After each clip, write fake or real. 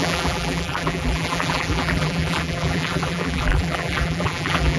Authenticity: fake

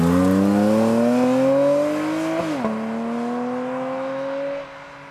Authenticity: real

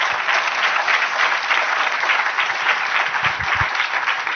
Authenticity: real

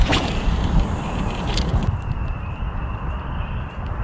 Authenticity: real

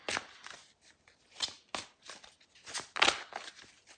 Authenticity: real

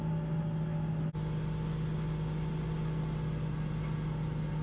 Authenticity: real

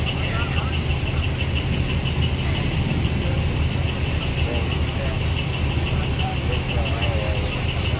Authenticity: real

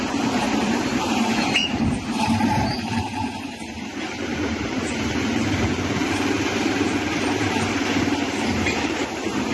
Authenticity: fake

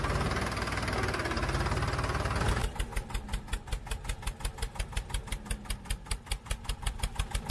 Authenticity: real